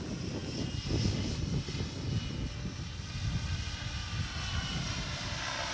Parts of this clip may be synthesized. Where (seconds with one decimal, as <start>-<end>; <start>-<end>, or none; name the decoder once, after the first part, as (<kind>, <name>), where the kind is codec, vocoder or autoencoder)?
none